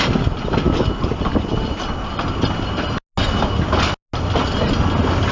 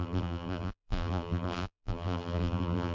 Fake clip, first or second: second